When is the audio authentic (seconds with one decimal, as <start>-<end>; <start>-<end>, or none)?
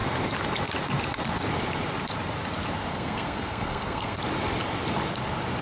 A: 0.0-2.9; 4.2-5.6